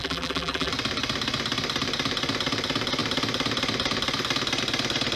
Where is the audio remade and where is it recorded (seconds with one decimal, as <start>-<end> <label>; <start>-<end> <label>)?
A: 0.0-0.7 remade; 0.7-5.2 recorded